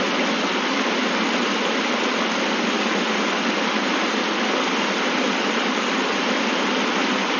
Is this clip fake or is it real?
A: real